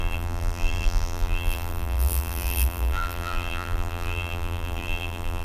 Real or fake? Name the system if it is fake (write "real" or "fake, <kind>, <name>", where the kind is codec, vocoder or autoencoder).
fake, vocoder, BigVGAN v2